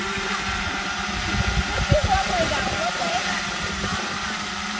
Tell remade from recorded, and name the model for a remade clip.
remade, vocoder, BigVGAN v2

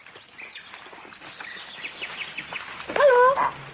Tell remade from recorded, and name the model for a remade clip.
recorded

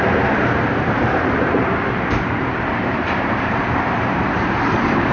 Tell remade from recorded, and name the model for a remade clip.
remade, vocoder, BigVGAN v2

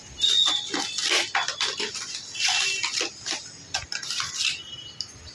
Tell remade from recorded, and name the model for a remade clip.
recorded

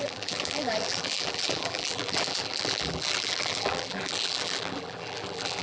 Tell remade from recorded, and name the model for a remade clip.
remade, vocoder, BigVGAN v2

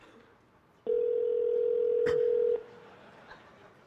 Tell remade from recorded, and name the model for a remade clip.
recorded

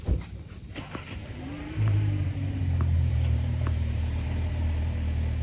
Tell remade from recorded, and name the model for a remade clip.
remade, vocoder, BigVGAN v2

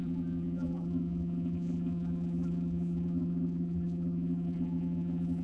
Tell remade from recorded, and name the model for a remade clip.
remade, vocoder, BigVGAN v2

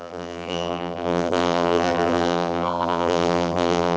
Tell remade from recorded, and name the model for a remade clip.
remade, vocoder, BigVGAN v2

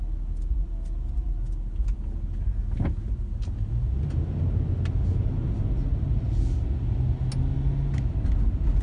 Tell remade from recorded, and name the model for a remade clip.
recorded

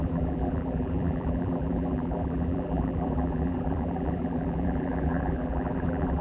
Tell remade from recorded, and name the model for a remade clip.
remade, vocoder, BigVGAN v2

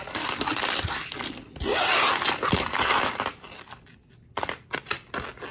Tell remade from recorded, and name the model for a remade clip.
recorded